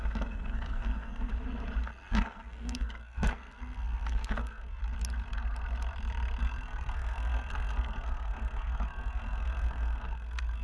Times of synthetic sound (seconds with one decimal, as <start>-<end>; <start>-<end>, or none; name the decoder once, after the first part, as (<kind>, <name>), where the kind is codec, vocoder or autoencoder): 0.0-1.3 (codec, SNAC); 2.1-4.8; 6.4-10.6